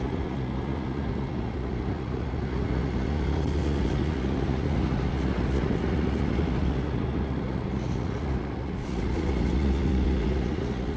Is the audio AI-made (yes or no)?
yes